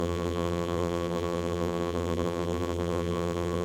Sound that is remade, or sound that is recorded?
remade